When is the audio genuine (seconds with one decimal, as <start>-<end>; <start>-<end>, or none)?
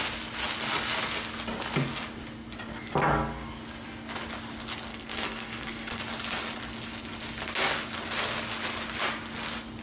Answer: 0.0-4.9; 6.0-9.8